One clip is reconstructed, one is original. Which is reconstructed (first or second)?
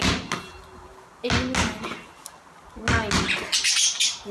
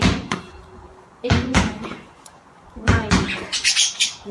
second